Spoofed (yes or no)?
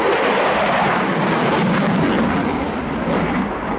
no